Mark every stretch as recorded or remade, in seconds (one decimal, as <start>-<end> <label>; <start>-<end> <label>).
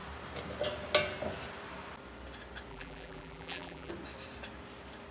0.0-2.7 recorded; 2.7-3.9 remade; 3.9-5.1 recorded